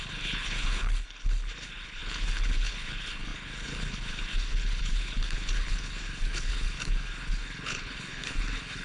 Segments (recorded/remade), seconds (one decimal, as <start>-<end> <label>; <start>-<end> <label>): 0.0-8.8 remade